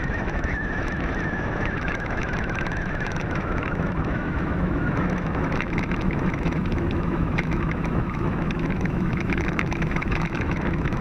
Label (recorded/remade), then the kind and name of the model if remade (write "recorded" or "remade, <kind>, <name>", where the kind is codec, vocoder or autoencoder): remade, autoencoder, DAC-VAE